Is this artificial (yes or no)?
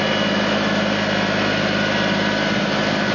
no